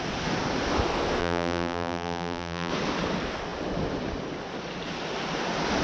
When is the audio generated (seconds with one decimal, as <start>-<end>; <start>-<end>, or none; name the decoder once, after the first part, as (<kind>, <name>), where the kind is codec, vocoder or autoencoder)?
1.2-2.7 (vocoder, BigVGAN v2)